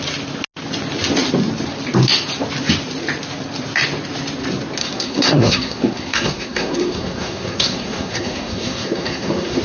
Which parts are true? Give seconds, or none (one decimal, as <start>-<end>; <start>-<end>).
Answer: 0.0-4.8